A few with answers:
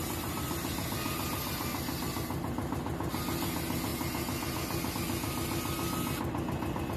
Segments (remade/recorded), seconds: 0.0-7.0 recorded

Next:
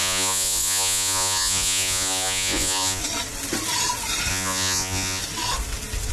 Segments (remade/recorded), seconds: 0.0-3.0 remade; 3.0-4.3 recorded; 4.3-5.2 remade; 5.2-6.1 recorded

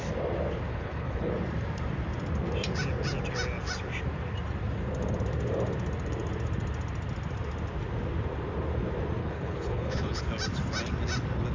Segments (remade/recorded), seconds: 0.0-0.7 recorded; 0.7-1.3 remade; 1.3-9.2 recorded; 9.2-10.2 remade; 10.2-11.5 recorded

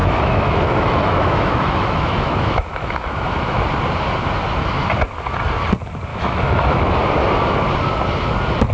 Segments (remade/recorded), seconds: 0.0-3.6 remade; 3.6-6.1 recorded; 6.1-6.9 remade; 6.9-8.7 recorded